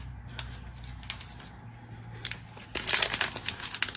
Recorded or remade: recorded